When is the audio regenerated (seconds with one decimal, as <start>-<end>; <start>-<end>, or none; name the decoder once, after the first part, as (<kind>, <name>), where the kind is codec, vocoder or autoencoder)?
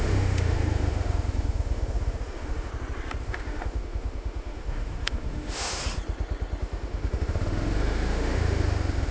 0.0-2.7 (autoencoder, DAC-VAE); 3.2-5.8; 6.6-9.1